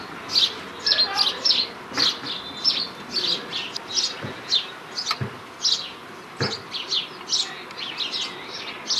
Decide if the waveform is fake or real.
real